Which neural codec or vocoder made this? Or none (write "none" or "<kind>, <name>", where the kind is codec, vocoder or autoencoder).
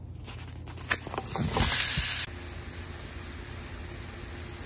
none